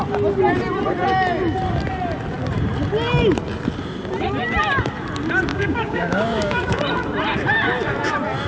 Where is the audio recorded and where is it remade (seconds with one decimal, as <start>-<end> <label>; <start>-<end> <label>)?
0.0-5.5 recorded; 5.5-6.8 remade; 6.8-8.5 recorded